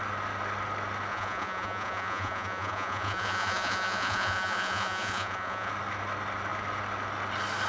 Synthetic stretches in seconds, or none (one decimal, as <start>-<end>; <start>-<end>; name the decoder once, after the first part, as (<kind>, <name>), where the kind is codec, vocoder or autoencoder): 1.1-5.7 (vocoder, Vocos)